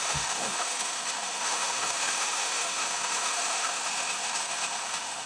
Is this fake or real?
fake